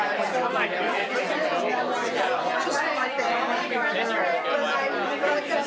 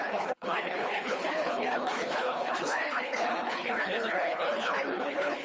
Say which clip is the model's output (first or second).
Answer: second